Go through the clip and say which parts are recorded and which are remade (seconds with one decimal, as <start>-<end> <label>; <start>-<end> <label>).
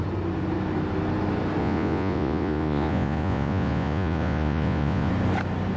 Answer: 0.0-1.6 recorded; 1.6-5.1 remade; 5.1-5.8 recorded